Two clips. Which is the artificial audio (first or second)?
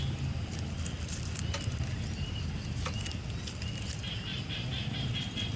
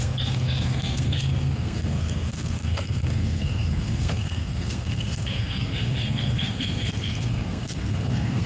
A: second